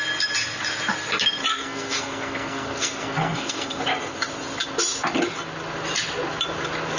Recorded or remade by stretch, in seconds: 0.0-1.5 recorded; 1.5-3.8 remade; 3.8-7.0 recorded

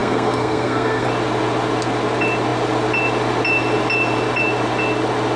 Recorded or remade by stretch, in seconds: 0.0-1.1 remade; 1.1-5.4 recorded

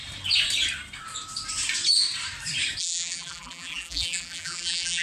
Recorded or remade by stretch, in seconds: 0.0-2.8 recorded; 2.8-5.0 remade

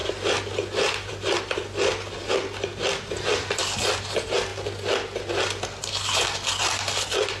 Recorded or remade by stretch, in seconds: 0.0-7.4 recorded